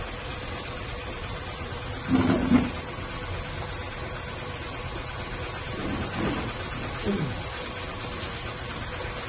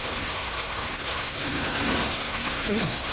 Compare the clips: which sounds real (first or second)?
first